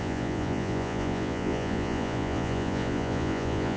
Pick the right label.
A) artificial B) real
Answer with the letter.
A